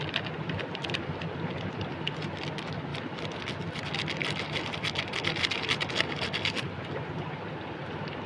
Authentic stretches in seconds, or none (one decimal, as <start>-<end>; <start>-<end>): 0.0-8.3